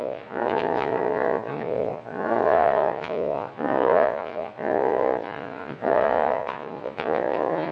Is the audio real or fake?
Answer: fake